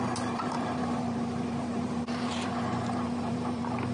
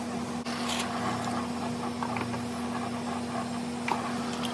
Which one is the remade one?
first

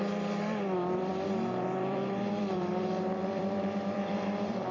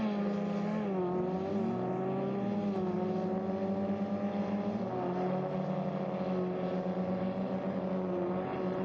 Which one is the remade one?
first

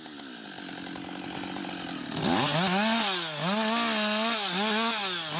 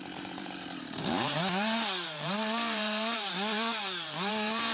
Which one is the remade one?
second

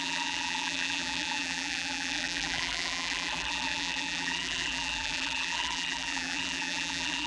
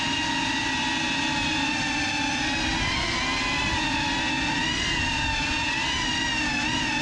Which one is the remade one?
first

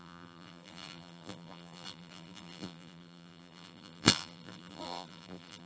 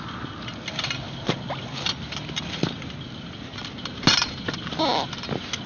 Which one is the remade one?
first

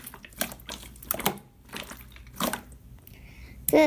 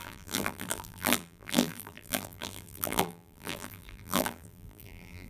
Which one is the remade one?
second